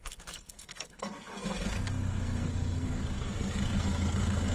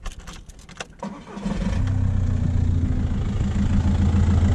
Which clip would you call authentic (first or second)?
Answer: second